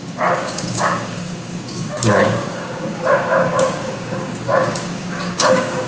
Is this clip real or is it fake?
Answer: fake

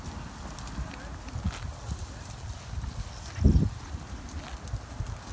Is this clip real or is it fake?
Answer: real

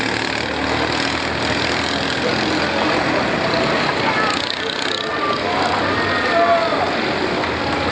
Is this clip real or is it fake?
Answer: real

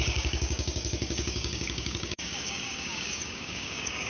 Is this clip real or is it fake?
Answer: fake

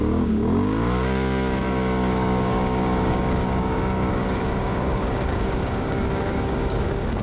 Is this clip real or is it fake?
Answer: fake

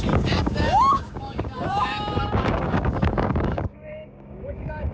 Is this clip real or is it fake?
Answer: fake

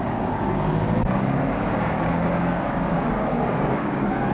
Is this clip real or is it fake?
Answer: fake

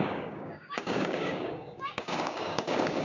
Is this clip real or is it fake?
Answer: fake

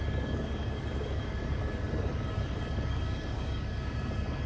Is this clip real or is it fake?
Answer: fake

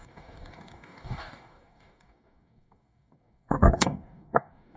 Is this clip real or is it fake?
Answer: fake